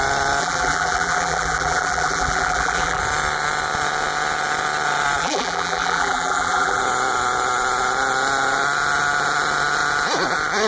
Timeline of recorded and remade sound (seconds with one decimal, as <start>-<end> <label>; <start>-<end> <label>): 0.0-0.4 recorded; 0.4-3.0 remade; 3.0-5.2 recorded; 5.2-6.8 remade; 6.8-10.7 recorded